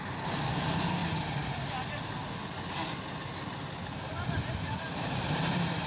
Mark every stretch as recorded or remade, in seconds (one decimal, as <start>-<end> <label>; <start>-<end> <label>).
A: 0.0-1.0 remade; 1.0-4.5 recorded; 4.5-5.9 remade